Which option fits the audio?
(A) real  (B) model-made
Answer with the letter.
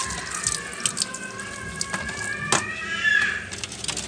A